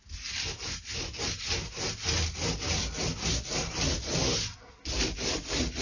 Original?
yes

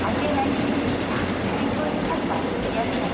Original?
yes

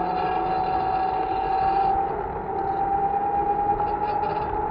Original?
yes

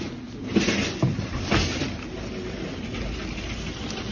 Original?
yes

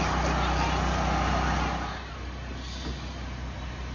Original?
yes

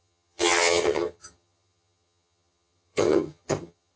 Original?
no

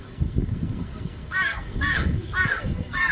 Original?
no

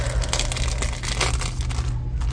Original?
yes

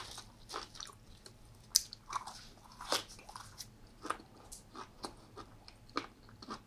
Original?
yes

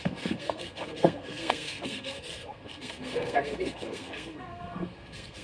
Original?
no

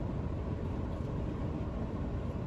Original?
yes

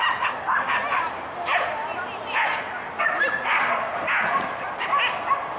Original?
yes